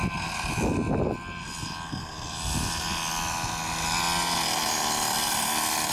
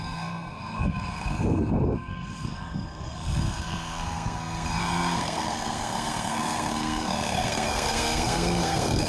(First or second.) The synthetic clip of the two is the second